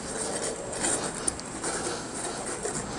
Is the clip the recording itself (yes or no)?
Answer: yes